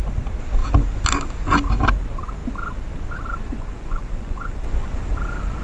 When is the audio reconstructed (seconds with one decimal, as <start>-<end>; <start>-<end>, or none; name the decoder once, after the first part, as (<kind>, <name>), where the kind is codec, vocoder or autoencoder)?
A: 3.5-5.1 (vocoder, Vocos)